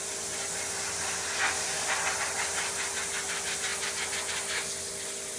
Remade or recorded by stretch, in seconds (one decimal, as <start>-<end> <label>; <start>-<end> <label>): 0.0-5.4 recorded